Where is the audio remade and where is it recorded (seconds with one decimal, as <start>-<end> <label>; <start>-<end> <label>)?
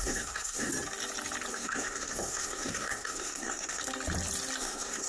0.0-0.7 remade; 0.7-1.5 recorded; 1.5-3.8 remade; 3.8-4.6 recorded; 4.6-5.1 remade